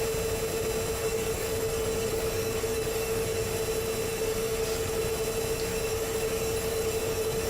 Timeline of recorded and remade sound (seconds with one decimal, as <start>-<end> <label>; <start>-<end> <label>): 0.0-1.0 recorded; 1.0-3.5 remade; 3.5-4.1 recorded; 4.1-5.0 remade; 5.0-5.7 recorded; 5.7-7.5 remade